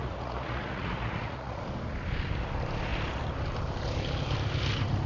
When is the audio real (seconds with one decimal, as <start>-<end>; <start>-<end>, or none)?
1.6-5.1